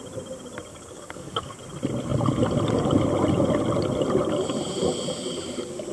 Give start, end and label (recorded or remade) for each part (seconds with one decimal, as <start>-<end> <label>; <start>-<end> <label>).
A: 0.0-0.7 recorded; 0.7-1.6 remade; 1.6-5.9 recorded